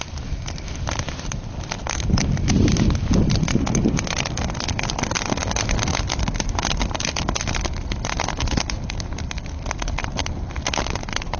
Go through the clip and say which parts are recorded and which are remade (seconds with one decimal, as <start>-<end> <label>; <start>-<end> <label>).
0.0-11.4 recorded